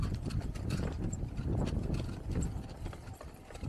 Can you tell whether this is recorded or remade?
remade